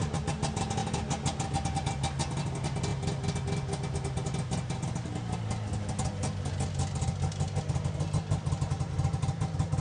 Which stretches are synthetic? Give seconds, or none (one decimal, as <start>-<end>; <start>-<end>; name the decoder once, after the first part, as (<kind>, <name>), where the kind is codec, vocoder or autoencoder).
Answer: none